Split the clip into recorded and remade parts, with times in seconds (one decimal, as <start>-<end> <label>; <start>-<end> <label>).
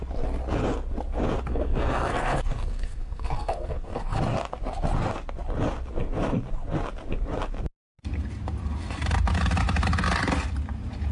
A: 0.0-1.5 recorded; 1.5-4.2 remade; 4.2-11.1 recorded